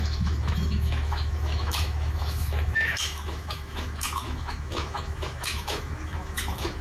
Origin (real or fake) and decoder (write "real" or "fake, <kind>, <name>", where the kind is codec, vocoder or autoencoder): fake, autoencoder, DAC-VAE